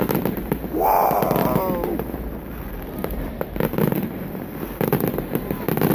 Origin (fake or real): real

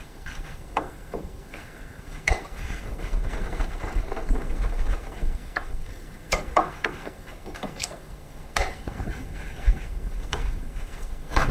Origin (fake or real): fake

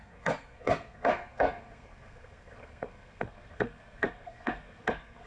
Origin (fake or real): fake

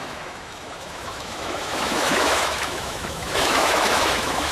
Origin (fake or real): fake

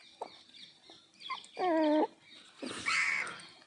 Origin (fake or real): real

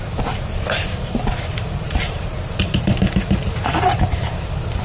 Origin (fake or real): fake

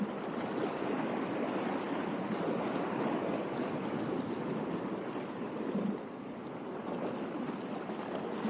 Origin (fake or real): real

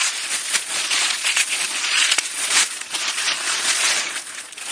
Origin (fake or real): fake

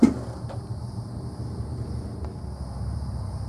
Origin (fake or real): fake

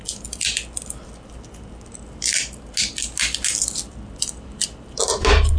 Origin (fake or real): real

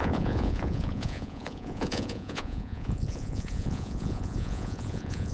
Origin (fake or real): fake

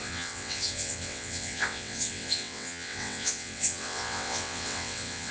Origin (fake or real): fake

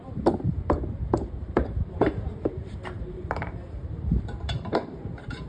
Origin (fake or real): fake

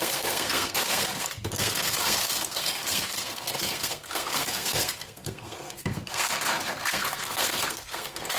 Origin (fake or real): fake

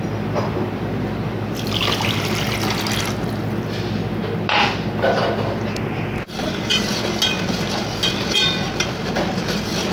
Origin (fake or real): real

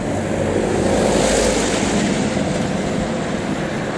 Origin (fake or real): real